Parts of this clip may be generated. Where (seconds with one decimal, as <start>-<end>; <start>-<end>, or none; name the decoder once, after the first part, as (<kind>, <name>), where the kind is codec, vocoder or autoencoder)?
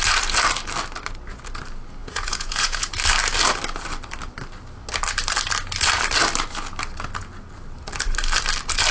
2.0-2.9 (vocoder, Vocos)